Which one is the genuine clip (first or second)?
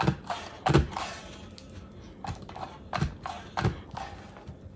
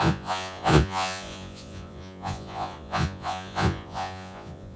first